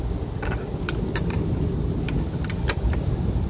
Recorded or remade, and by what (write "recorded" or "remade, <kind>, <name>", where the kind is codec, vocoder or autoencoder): recorded